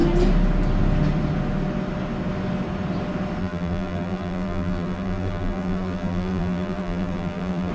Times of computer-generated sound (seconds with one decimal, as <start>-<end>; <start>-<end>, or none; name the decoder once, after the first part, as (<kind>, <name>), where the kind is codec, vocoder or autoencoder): 3.4-7.7 (vocoder, BigVGAN v2)